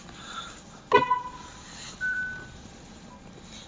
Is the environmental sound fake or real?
real